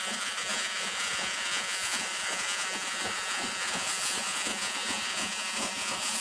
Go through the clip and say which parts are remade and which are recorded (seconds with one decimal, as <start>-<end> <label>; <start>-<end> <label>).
0.0-6.2 remade